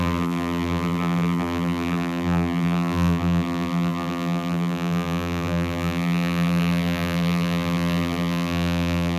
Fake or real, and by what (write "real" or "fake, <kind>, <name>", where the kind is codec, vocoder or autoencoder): fake, vocoder, BigVGAN v2